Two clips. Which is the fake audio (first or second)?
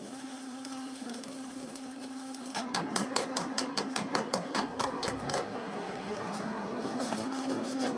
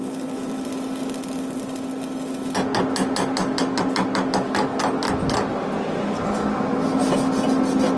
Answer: first